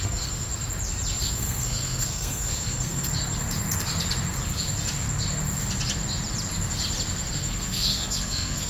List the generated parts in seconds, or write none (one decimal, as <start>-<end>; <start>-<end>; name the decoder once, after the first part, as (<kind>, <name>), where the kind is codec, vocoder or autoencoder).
0.0-0.5 (codec, SNAC); 1.3-3.1; 7.3-8.7